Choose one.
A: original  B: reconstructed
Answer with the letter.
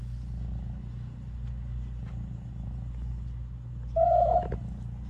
A